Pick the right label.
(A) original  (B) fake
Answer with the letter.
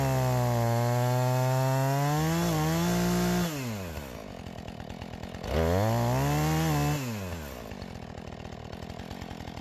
A